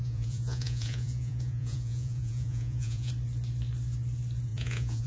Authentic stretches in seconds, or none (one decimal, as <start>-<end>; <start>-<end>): 3.1-4.5